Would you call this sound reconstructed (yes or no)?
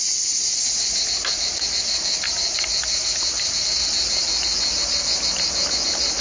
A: no